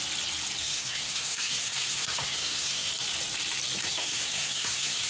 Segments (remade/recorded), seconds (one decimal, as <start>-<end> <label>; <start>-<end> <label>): 0.0-0.6 recorded; 0.6-2.9 remade; 2.9-3.8 recorded; 3.8-5.1 remade